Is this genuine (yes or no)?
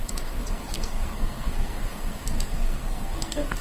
no